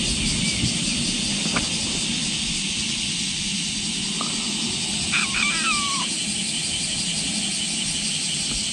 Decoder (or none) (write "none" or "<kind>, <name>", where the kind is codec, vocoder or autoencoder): none